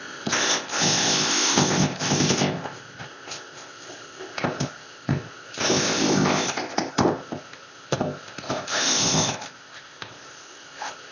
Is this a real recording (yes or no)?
no